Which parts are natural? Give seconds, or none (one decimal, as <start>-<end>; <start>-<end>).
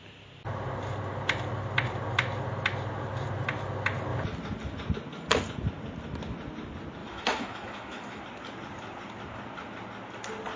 0.0-7.0; 8.2-10.6